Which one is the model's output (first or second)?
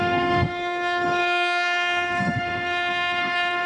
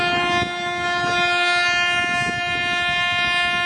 first